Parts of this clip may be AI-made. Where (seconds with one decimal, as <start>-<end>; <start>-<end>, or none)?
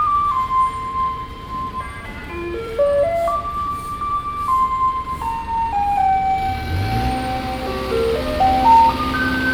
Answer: 0.9-4.1